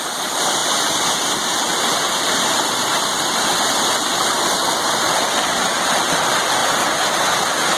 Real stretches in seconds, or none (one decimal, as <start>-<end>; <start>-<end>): 0.0-7.8